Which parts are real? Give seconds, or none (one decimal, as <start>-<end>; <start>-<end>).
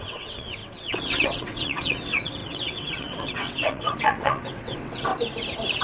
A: 5.1-5.8